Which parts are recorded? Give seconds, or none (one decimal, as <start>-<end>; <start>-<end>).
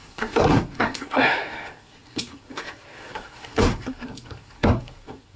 none